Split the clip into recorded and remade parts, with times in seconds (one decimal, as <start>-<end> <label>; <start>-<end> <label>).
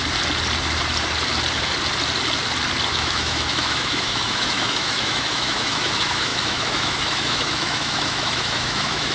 0.0-2.9 recorded; 2.9-9.1 remade